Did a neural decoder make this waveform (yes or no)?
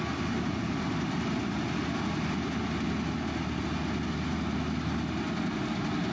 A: no